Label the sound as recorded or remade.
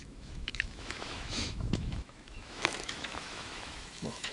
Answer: remade